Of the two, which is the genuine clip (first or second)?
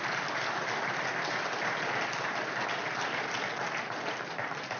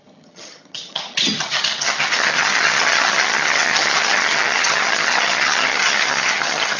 first